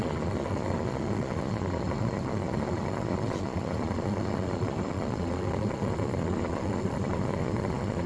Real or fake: fake